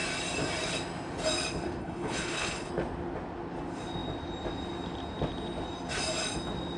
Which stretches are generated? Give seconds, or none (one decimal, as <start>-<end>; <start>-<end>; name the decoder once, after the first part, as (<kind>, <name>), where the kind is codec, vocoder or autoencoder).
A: 1.8-2.7 (codec, HILCodec)